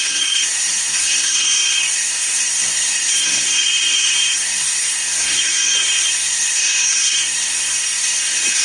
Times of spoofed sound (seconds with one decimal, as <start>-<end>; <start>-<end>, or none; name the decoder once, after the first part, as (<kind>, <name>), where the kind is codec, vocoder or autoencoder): 0.0-8.6 (codec, SNAC)